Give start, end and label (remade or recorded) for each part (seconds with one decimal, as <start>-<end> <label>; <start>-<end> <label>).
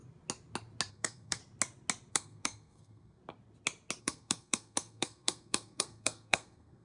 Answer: 0.0-0.9 recorded; 0.9-1.4 remade; 1.4-2.1 recorded; 2.1-3.2 remade; 3.2-4.0 recorded; 4.0-6.8 remade